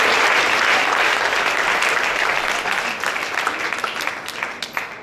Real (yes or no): yes